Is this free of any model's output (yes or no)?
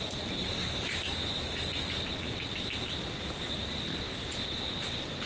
yes